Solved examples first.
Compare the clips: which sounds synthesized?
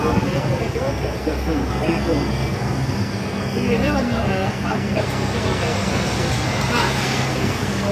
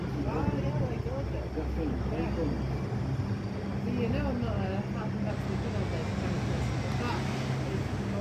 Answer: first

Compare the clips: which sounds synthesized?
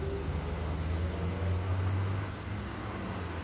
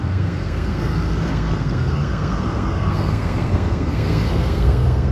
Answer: second